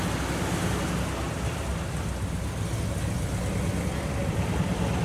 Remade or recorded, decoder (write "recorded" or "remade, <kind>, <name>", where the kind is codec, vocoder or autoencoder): recorded